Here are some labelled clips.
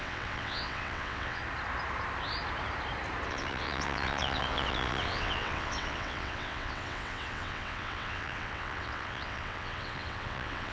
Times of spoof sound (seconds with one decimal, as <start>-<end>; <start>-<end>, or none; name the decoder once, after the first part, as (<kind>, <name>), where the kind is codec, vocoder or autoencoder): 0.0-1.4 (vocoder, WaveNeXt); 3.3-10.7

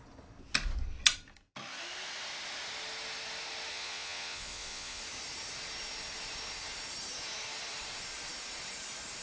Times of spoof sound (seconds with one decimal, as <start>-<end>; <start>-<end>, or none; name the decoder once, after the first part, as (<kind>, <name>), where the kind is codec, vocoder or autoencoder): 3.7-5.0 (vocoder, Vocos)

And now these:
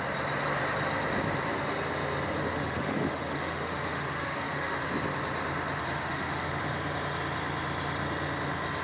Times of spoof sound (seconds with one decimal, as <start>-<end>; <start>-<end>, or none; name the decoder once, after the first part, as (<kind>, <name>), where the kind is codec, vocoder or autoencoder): 2.4-4.8 (autoencoder, DAC-VAE); 5.8-6.6